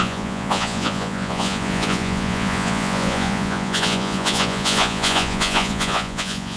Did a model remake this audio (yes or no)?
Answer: yes